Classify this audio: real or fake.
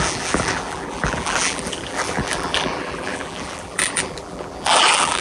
fake